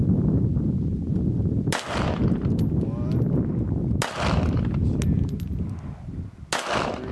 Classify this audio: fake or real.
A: real